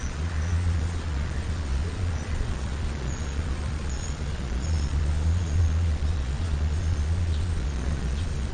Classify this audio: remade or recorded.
remade